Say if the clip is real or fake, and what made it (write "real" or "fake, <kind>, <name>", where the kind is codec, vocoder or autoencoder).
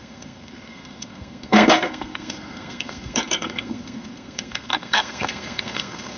fake, codec, SNAC